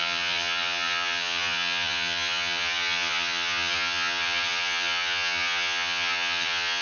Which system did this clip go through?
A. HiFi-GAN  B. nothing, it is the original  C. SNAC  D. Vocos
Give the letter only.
A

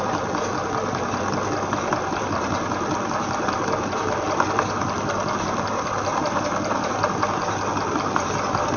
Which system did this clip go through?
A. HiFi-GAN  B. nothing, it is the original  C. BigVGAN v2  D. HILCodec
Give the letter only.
B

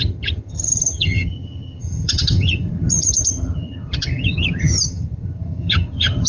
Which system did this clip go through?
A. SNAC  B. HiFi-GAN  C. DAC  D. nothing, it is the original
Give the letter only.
B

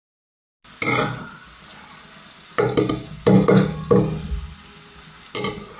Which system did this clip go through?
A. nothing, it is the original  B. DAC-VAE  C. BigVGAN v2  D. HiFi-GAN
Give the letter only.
A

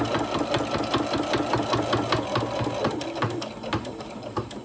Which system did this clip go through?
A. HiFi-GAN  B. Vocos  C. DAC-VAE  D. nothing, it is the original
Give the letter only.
D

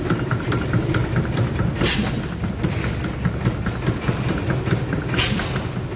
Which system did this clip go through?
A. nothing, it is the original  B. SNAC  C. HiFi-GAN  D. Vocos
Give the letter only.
A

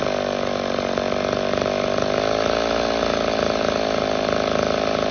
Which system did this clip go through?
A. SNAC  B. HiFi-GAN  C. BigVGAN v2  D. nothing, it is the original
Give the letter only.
D